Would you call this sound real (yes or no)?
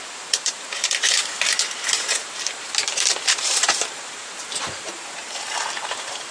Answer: no